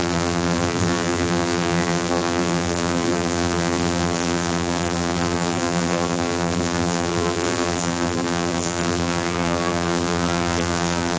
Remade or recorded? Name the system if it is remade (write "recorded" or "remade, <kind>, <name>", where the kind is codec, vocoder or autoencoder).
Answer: remade, vocoder, BigVGAN v2